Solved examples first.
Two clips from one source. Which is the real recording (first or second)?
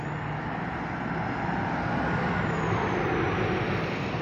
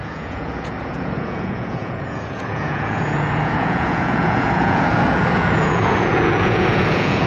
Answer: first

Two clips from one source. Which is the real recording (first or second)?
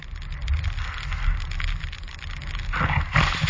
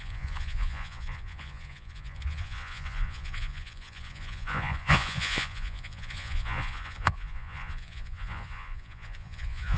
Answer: first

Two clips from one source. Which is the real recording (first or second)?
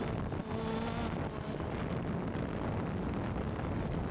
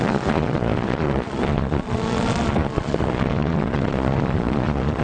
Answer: first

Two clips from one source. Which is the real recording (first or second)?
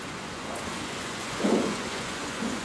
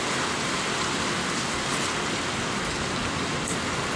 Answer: second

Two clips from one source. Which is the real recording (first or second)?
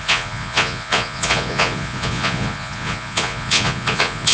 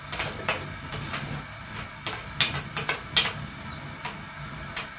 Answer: second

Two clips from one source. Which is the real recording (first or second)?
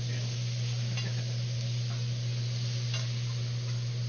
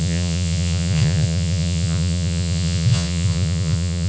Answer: first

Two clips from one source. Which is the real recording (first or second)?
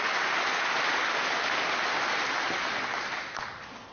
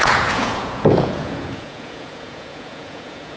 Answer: first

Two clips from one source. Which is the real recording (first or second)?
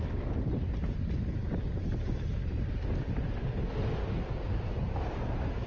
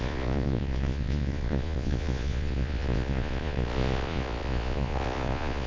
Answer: first